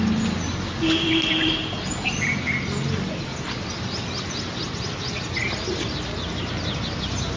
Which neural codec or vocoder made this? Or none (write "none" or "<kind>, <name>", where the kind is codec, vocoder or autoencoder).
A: none